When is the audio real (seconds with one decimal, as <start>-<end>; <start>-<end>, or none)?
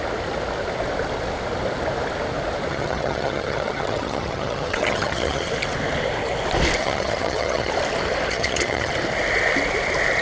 0.0-2.7; 5.5-6.8; 7.7-8.3; 8.9-10.2